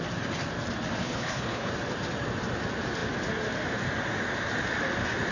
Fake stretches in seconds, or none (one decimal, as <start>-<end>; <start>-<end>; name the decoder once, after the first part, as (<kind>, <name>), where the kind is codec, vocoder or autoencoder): 1.0-1.7 (codec, HILCodec)